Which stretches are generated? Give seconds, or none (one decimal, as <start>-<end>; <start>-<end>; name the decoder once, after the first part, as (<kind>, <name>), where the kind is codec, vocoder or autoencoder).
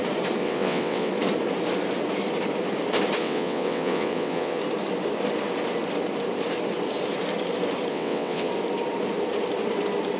0.4-1.1 (vocoder, WaveNeXt); 3.2-4.6; 7.9-8.5